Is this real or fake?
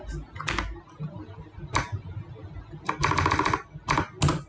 real